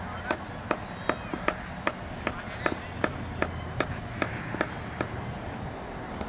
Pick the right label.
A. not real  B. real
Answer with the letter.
B